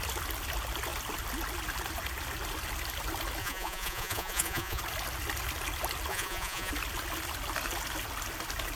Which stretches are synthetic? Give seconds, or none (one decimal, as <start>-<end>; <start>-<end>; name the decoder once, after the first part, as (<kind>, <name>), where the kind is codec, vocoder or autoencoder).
3.4-4.8 (vocoder, Vocos); 6.1-6.7